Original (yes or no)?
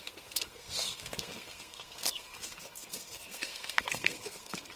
no